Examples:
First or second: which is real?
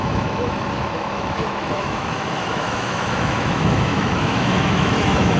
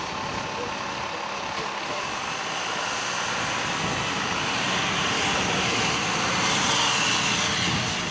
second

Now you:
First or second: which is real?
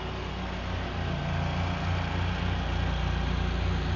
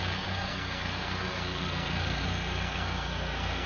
first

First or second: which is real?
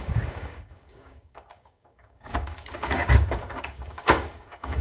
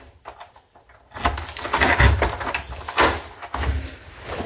second